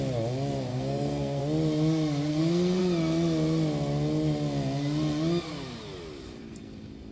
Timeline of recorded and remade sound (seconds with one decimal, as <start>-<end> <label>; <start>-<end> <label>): 0.0-0.7 recorded; 0.7-1.4 remade; 1.4-2.3 recorded; 2.3-2.8 remade; 2.8-6.4 recorded; 6.4-7.1 remade